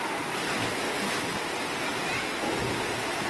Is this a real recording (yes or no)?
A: yes